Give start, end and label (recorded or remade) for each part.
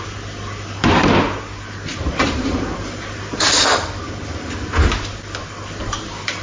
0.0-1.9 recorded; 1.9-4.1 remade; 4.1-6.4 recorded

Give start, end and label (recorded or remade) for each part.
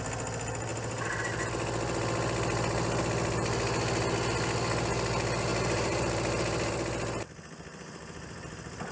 0.0-5.5 recorded; 5.5-6.7 remade; 6.7-8.9 recorded